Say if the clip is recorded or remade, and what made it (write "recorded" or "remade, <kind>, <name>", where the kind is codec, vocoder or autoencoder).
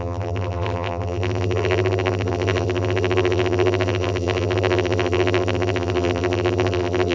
remade, vocoder, BigVGAN v2